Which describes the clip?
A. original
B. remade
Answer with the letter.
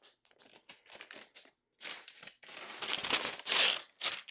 A